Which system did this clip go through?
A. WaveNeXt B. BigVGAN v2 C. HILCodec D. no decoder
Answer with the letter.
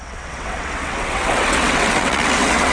A